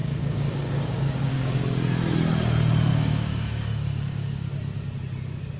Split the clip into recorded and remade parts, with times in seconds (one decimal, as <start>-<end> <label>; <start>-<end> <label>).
0.0-1.6 remade; 1.6-2.9 recorded; 2.9-4.5 remade; 4.5-5.6 recorded